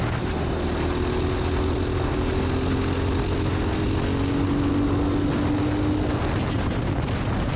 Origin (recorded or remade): recorded